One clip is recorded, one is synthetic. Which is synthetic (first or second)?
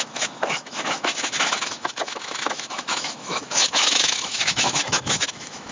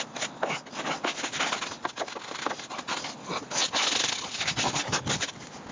first